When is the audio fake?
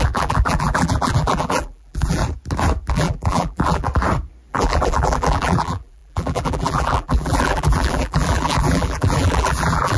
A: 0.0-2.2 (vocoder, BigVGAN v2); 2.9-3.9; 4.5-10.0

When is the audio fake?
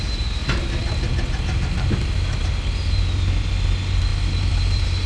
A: none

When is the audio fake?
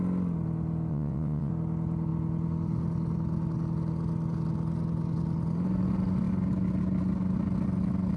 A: 0.9-1.5 (vocoder, WaveNeXt)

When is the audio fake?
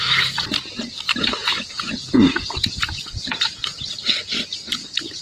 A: 1.4-3.8 (vocoder, Vocos)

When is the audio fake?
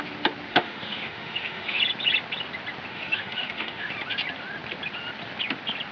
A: 0.5-1.8 (autoencoder, DAC-VAE); 2.9-3.9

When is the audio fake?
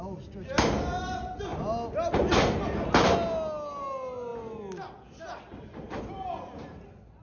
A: none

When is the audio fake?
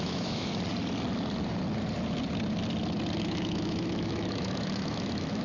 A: 0.0-0.5 (autoencoder, DAC-VAE); 3.2-5.4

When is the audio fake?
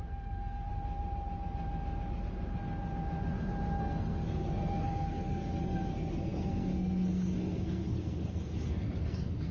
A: 0.0-0.7 (codec, SNAC); 3.8-9.5